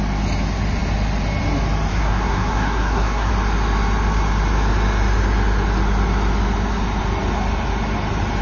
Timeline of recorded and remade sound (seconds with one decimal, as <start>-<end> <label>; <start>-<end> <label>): 0.0-1.9 recorded; 1.9-3.3 remade; 3.3-8.4 recorded